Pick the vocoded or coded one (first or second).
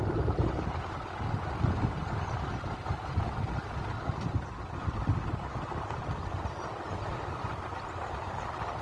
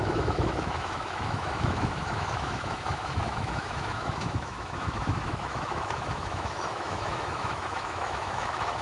second